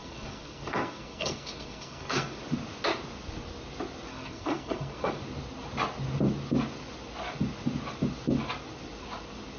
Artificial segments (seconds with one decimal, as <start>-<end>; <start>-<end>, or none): 0.0-2.4; 4.1-5.2